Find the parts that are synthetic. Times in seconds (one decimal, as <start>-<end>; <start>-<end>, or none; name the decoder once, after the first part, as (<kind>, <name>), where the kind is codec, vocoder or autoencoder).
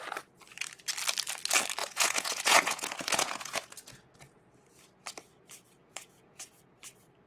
1.8-4.4 (vocoder, Vocos); 5.8-6.6